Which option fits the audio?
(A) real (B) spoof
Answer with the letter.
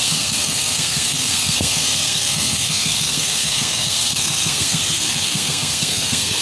B